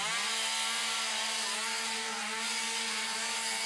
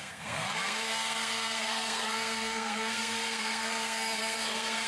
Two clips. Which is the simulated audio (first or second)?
second